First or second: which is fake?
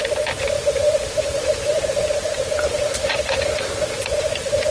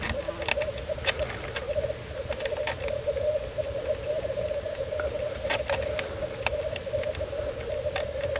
first